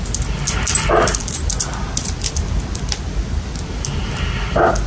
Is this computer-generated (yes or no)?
no